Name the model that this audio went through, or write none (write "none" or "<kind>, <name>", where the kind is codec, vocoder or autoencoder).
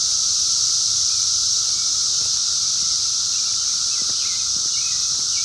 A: none